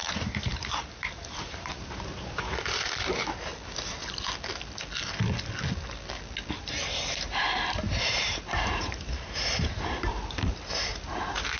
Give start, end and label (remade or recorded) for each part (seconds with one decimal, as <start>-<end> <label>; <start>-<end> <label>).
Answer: 0.0-3.5 remade; 3.5-6.6 recorded; 6.6-11.6 remade